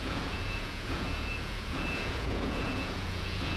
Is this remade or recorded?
remade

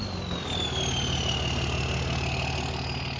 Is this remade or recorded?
recorded